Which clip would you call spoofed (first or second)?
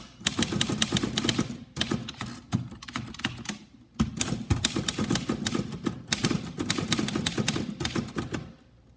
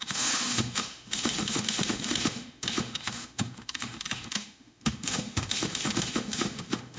second